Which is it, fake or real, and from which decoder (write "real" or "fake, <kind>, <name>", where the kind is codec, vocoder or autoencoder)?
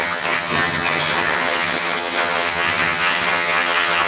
fake, vocoder, HiFi-GAN